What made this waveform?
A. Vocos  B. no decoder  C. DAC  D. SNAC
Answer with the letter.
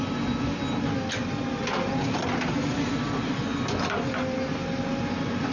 B